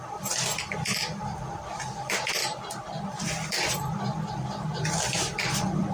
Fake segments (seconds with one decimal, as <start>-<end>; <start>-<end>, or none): 0.0-5.9

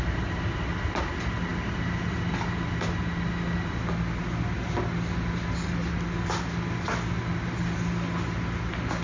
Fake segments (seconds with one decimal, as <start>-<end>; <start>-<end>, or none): none